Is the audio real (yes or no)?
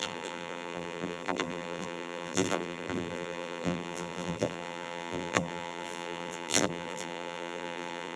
no